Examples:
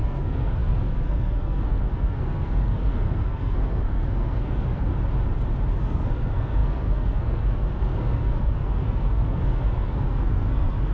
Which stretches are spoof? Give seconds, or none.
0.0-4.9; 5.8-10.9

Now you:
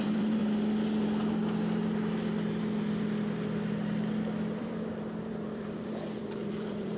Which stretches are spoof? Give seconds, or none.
0.0-0.4; 4.6-7.0

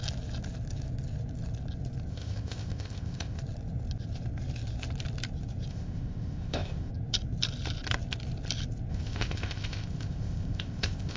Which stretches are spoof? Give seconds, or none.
2.1-3.4; 5.7-6.9; 8.9-11.2

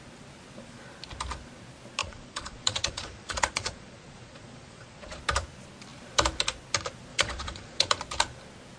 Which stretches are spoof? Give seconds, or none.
2.0-5.2; 7.1-7.9

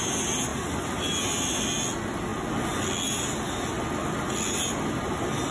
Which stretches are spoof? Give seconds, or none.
0.5-1.0

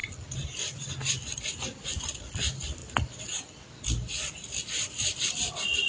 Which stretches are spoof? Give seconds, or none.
0.0-2.8; 4.6-5.9

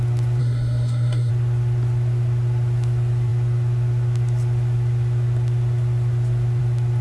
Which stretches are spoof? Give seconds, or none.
0.4-1.3